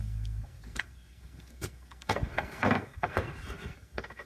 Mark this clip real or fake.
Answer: fake